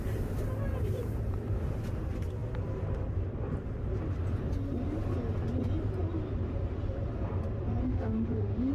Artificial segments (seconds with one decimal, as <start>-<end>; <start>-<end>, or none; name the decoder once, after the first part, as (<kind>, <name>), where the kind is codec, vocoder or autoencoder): 7.8-8.7 (autoencoder, DAC-VAE)